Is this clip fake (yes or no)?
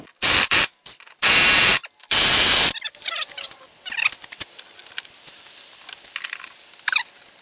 no